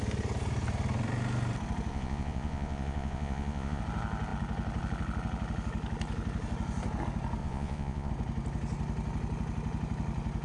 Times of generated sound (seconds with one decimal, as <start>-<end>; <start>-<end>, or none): 1.9-3.8; 7.4-8.1